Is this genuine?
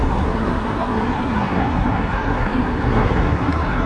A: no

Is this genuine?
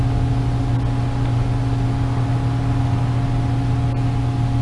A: yes